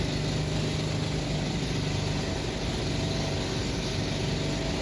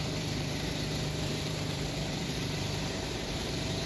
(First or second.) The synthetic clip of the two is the second